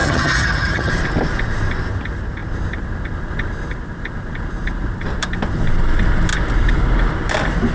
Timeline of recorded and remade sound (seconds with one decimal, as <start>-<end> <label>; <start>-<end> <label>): 0.0-0.9 remade; 0.9-7.7 recorded